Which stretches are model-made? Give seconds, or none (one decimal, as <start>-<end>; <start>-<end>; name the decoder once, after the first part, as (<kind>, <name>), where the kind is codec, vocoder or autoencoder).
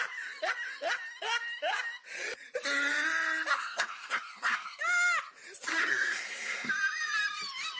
3.5-4.8 (codec, SNAC); 5.7-6.7